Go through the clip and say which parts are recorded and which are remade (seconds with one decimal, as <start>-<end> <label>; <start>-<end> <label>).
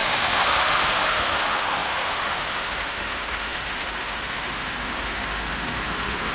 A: 0.0-6.3 remade